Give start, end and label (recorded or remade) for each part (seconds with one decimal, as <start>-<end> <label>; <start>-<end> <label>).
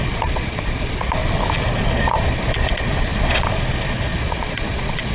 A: 0.0-1.2 remade; 1.2-1.8 recorded; 1.8-5.1 remade